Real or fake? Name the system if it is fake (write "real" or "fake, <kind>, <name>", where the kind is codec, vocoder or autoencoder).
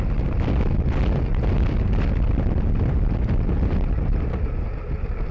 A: real